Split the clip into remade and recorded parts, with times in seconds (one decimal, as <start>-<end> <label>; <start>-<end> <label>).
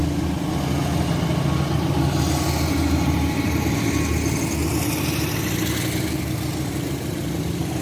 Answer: 0.0-7.8 recorded